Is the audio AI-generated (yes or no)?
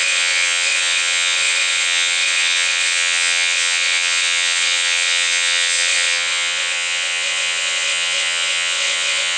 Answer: yes